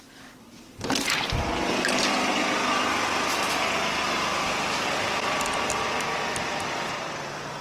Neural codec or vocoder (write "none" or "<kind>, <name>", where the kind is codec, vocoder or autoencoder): none